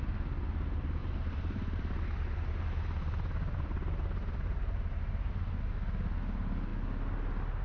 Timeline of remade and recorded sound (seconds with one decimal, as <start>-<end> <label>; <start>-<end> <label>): 0.0-1.0 recorded; 1.0-5.3 remade; 5.3-7.6 recorded